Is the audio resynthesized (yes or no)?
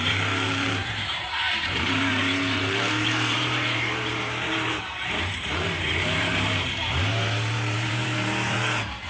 yes